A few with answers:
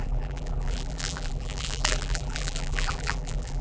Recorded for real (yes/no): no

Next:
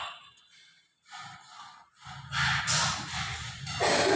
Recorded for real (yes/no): yes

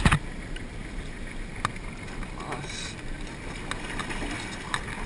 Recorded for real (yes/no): yes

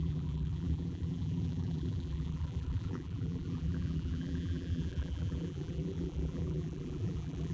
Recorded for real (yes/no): no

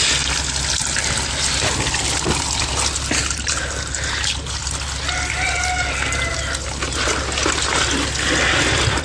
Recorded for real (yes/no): yes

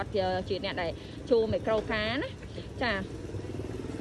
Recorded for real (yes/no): yes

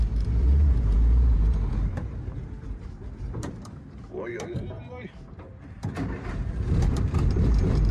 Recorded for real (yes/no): no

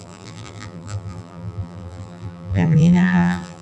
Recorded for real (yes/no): no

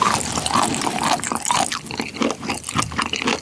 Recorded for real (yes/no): yes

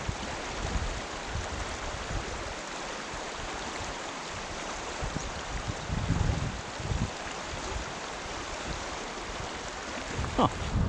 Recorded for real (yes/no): no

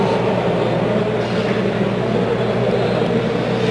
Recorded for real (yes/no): yes